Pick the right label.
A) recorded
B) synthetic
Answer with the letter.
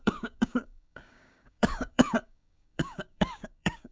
B